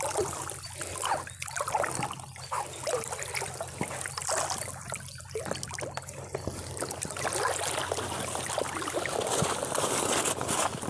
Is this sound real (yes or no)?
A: yes